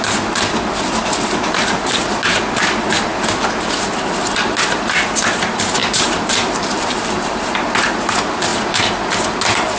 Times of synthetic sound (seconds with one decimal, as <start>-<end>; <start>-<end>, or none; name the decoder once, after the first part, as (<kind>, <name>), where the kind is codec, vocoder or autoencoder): 5.8-7.5 (vocoder, BigVGAN v2)